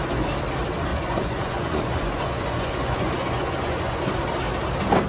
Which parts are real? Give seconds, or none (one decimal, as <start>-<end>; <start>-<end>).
0.0-0.9; 4.0-5.1